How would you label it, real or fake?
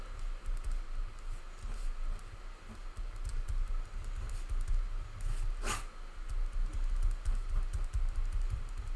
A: real